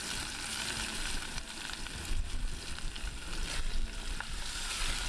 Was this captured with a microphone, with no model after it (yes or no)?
yes